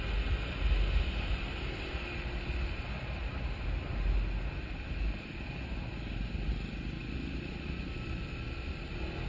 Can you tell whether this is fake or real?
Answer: real